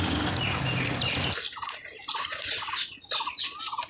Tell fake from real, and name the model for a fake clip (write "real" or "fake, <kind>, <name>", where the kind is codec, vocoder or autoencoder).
real